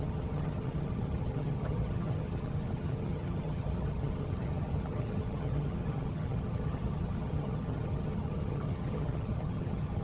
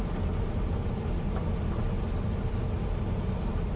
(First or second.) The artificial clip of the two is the first